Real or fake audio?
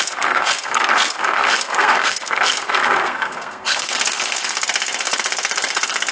fake